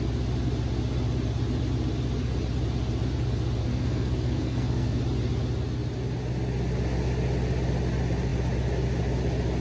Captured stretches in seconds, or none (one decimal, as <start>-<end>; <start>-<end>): 0.0-3.7; 5.0-9.6